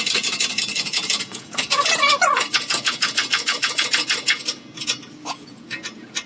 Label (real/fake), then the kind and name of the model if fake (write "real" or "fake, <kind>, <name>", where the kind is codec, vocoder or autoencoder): fake, vocoder, Vocos